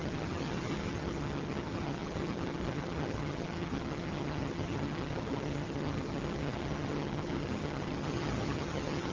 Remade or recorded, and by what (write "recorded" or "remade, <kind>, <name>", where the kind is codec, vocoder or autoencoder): remade, vocoder, HiFi-GAN